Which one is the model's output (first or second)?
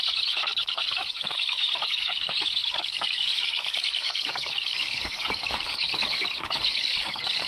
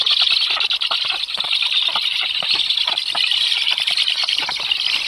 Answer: first